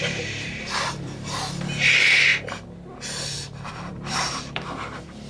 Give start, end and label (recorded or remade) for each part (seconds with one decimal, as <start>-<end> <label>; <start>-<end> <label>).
0.0-2.3 remade; 2.3-3.7 recorded; 3.7-5.3 remade